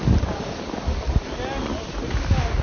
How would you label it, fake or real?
real